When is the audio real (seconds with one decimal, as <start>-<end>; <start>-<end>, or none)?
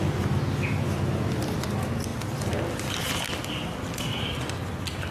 0.0-5.1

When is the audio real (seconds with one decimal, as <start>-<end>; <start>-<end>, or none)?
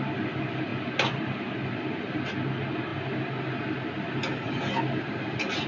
0.0-5.7